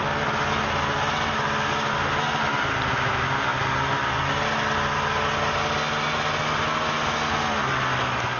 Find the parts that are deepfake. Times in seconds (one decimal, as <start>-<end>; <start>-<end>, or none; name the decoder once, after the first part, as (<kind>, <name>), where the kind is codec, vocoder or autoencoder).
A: none